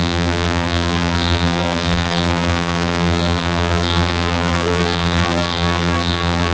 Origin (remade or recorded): remade